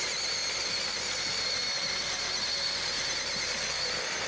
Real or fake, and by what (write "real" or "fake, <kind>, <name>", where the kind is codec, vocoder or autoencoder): real